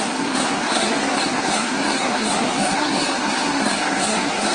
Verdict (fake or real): fake